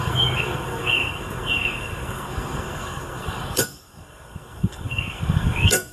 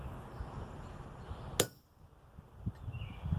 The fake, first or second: first